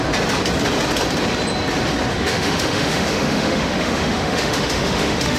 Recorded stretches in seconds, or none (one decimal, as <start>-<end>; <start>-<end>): 0.0-2.1